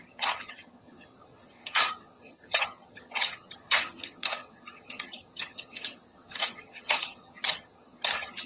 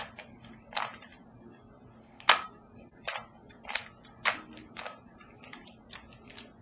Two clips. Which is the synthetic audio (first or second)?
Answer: first